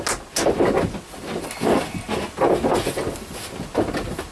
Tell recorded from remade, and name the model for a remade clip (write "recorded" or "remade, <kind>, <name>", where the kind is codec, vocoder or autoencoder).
recorded